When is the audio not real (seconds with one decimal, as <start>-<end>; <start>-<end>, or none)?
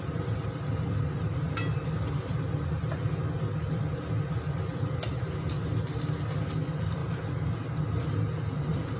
none